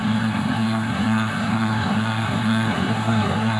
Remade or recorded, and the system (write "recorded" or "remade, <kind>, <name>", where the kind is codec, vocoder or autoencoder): remade, codec, SNAC